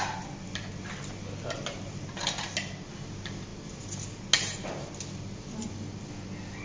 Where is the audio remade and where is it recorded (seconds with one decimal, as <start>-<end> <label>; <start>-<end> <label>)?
0.0-6.6 recorded